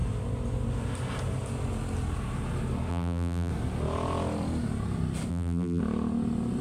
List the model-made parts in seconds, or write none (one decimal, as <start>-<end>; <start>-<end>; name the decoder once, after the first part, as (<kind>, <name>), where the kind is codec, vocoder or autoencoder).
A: 2.9-3.5 (vocoder, BigVGAN v2); 5.3-5.8